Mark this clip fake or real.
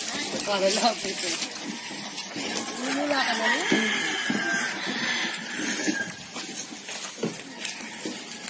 real